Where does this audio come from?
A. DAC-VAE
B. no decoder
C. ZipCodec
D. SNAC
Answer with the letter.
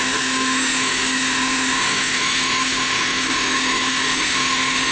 A